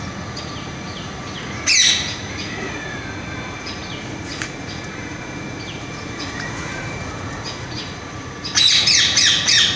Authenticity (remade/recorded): remade